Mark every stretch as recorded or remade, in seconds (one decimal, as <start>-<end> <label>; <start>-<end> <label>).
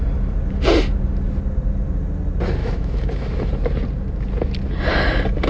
0.0-2.6 recorded; 2.6-3.5 remade; 3.5-5.5 recorded